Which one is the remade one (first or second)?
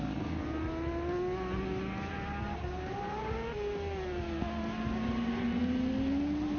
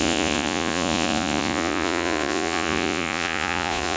second